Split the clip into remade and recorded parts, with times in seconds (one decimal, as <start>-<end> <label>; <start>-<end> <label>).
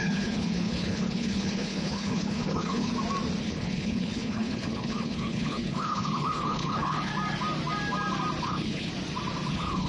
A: 0.0-2.9 remade; 2.9-3.4 recorded; 3.4-7.1 remade; 7.1-8.4 recorded; 8.4-8.9 remade; 8.9-9.5 recorded; 9.5-9.9 remade